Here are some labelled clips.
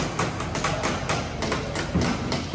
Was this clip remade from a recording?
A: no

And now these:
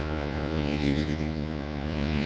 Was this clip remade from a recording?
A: yes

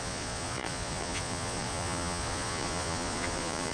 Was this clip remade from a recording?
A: yes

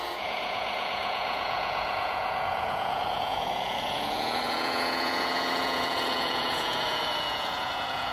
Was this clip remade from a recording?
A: yes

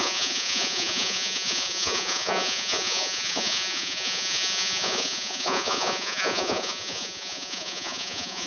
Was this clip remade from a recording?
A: yes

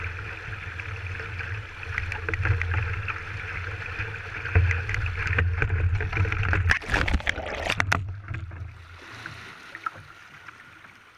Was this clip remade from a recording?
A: no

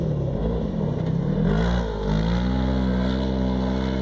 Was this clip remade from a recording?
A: no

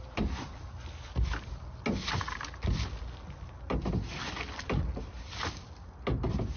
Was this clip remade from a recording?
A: no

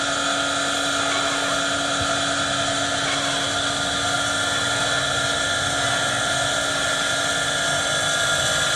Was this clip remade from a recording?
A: no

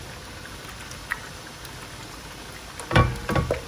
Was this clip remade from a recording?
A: no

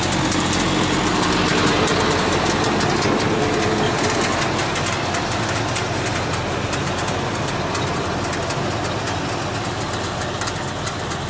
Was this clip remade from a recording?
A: no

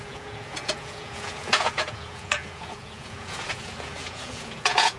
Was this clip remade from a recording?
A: yes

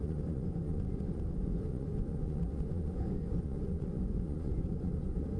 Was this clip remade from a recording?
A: yes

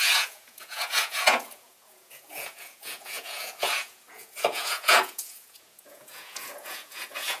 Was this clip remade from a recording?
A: yes